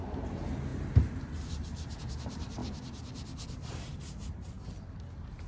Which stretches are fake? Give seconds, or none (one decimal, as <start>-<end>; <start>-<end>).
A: 0.0-2.6; 4.8-5.5